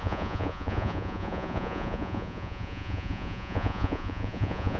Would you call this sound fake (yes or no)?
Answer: yes